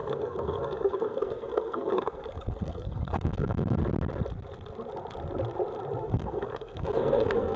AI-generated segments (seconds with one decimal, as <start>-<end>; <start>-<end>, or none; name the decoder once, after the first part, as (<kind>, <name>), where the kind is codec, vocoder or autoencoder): 0.0-3.8 (codec, SNAC); 6.0-7.6